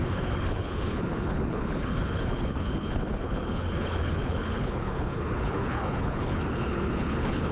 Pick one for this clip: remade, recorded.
remade